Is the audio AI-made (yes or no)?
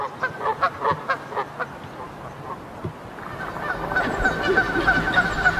no